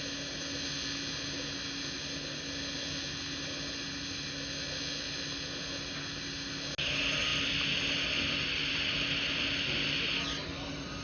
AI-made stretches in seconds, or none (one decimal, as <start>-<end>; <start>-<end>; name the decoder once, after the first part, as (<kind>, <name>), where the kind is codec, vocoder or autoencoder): none

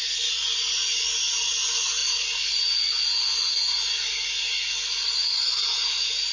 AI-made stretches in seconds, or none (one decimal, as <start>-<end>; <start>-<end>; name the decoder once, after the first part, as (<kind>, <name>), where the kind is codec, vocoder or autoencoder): none